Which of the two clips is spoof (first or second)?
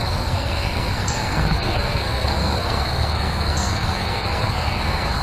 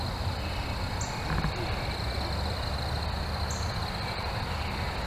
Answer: first